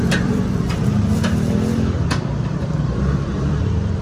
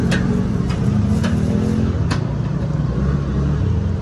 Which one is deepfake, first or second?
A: first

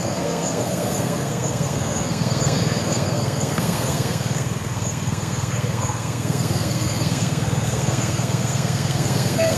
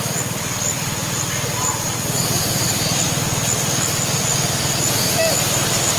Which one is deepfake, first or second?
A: first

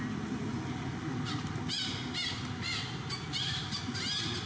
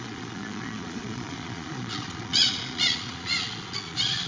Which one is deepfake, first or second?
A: second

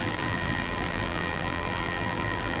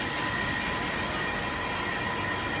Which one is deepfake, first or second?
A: first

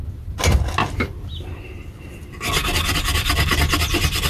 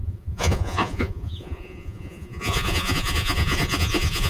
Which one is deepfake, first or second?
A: second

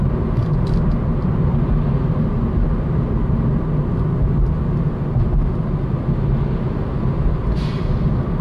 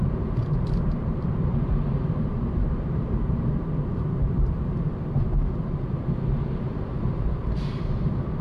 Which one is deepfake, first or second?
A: second